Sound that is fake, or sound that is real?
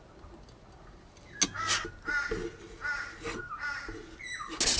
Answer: real